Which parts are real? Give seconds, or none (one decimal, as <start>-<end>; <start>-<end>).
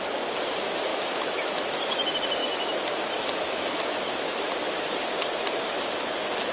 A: 0.0-0.9; 1.7-2.4; 4.4-6.5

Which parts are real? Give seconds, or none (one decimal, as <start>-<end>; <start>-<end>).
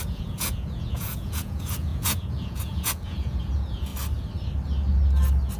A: 3.9-5.6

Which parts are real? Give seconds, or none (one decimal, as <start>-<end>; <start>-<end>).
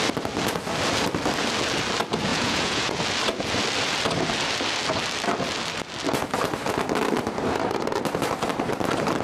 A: 0.0-2.3; 3.0-9.2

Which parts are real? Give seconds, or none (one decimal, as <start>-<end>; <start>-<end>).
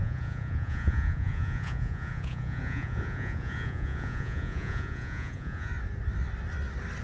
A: 5.7-7.0